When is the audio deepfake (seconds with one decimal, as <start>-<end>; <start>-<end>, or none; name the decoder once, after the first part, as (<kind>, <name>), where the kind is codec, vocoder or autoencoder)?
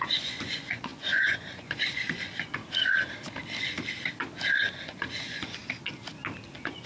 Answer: 0.0-2.5 (vocoder, Vocos); 4.6-5.6; 6.5-6.9